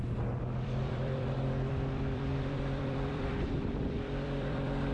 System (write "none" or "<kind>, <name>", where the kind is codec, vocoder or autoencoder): vocoder, BigVGAN v2